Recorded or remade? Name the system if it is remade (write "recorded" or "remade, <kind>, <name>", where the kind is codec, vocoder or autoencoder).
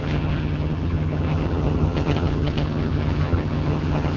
remade, vocoder, HiFi-GAN